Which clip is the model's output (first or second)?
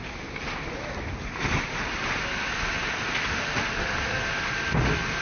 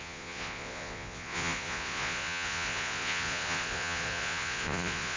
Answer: second